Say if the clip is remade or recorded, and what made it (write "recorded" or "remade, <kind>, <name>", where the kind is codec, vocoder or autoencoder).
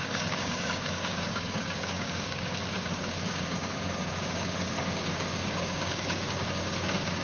remade, codec, DAC